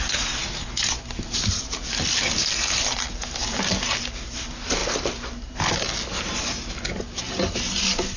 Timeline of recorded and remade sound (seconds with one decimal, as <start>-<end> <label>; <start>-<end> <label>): 0.0-8.2 recorded